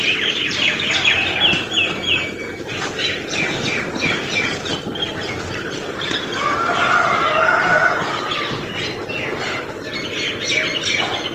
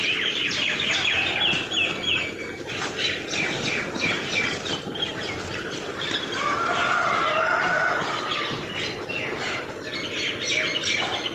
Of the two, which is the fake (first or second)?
second